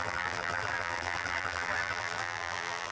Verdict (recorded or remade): remade